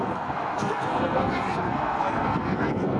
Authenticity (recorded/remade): remade